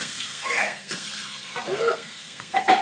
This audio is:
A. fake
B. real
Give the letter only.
A